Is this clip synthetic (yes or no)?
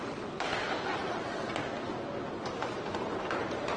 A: no